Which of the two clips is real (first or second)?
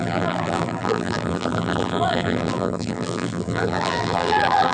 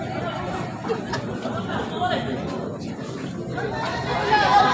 second